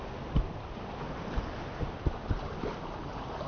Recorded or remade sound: recorded